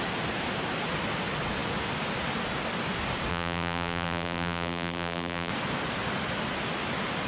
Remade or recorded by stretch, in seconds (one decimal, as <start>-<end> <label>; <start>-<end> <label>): 0.0-3.3 recorded; 3.3-5.5 remade; 5.5-7.3 recorded